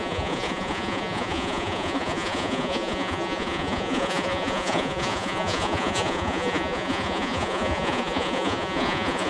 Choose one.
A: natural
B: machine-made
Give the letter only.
B